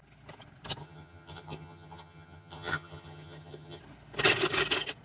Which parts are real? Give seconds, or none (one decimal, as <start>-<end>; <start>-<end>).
0.0-0.8; 3.8-5.0